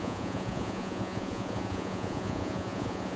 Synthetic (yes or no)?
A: yes